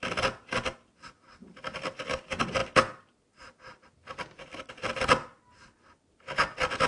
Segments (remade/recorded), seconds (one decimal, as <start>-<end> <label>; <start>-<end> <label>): 0.0-6.9 recorded